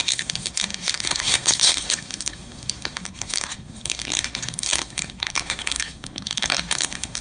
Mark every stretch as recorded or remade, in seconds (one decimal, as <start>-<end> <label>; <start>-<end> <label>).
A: 0.0-7.2 remade